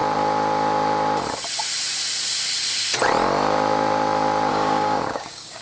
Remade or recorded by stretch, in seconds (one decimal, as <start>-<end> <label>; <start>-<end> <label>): 0.0-4.5 recorded; 4.5-5.6 remade

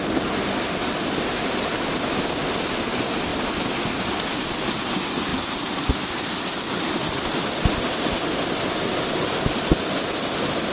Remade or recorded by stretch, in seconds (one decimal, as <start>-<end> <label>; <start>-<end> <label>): 0.0-3.3 recorded; 3.3-4.5 remade; 4.5-5.3 recorded; 5.3-6.0 remade; 6.0-10.7 recorded

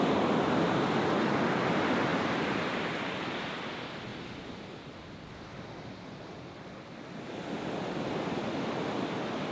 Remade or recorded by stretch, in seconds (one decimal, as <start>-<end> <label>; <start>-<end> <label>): 0.0-2.1 recorded; 2.1-3.5 remade; 3.5-4.1 recorded; 4.1-7.2 remade; 7.2-9.5 recorded

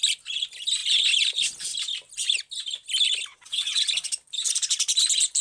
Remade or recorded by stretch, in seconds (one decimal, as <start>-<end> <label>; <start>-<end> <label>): 0.0-3.3 recorded; 3.3-3.8 remade; 3.8-5.4 recorded

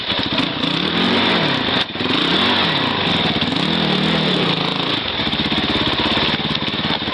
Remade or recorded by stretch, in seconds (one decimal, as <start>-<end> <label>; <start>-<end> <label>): 0.0-0.5 recorded; 0.5-1.3 remade; 1.3-7.1 recorded

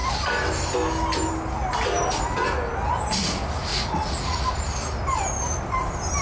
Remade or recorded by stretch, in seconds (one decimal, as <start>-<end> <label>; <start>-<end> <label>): 0.0-3.7 recorded; 3.7-4.5 remade; 4.5-6.2 recorded